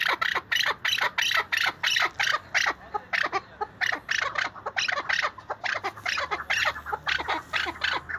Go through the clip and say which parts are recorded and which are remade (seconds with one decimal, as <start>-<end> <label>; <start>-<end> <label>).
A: 0.0-4.1 recorded; 4.1-8.2 remade